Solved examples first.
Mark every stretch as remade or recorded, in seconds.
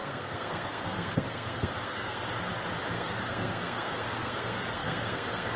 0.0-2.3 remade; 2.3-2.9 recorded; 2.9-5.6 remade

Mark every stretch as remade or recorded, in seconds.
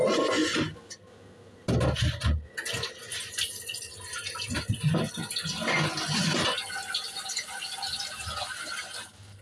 0.0-9.4 recorded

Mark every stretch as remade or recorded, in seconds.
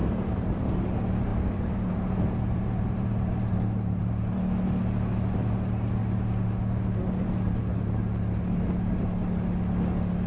0.0-0.8 remade; 0.8-1.3 recorded; 1.3-4.1 remade; 4.1-10.3 recorded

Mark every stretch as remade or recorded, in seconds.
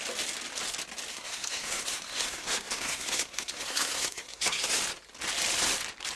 0.0-1.1 recorded; 1.1-4.8 remade; 4.8-6.2 recorded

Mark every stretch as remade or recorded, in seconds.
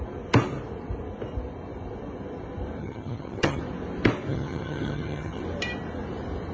0.0-2.8 recorded; 2.8-3.6 remade; 3.6-4.3 recorded; 4.3-5.4 remade; 5.4-6.5 recorded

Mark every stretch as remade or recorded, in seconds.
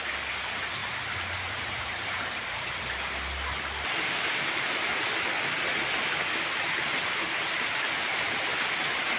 0.0-0.8 recorded; 0.8-2.8 remade; 2.8-9.2 recorded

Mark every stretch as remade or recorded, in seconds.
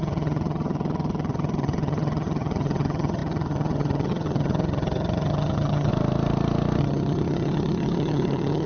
0.0-5.9 remade; 5.9-6.8 recorded; 6.8-8.7 remade